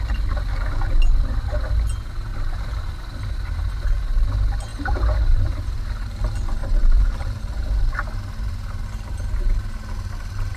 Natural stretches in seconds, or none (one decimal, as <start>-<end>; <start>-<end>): 0.0-4.7; 5.8-6.6; 7.4-10.6